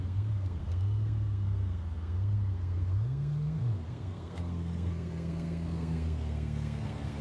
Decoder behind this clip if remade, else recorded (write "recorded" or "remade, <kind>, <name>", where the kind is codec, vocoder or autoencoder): remade, codec, SNAC